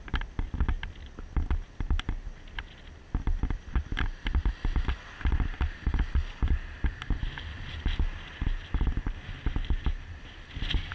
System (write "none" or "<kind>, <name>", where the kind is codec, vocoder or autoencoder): none